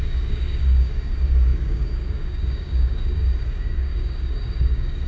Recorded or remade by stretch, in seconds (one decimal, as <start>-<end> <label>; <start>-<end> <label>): 0.0-5.1 remade